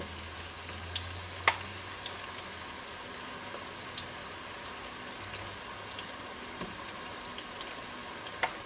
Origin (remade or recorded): recorded